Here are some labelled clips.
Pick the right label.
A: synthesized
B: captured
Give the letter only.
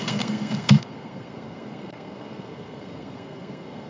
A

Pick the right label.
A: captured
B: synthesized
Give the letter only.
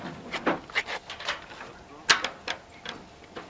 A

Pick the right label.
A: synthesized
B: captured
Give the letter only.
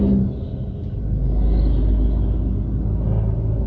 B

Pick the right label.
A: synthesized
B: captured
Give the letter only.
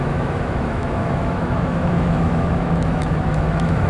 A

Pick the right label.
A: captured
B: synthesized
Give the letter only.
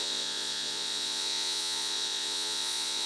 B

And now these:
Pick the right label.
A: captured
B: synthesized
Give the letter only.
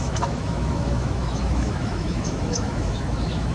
B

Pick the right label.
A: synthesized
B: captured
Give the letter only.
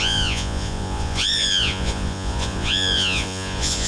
A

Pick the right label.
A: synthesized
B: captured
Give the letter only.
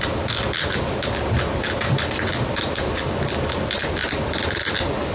B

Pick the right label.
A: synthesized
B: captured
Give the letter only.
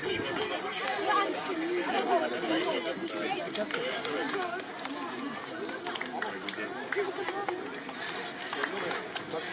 B